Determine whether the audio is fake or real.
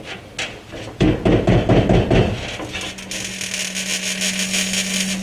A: real